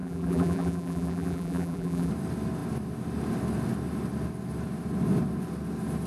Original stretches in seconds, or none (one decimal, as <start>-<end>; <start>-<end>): 2.1-6.1